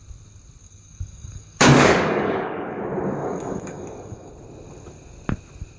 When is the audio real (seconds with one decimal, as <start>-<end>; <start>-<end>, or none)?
0.0-0.6; 2.8-3.2; 4.3-5.8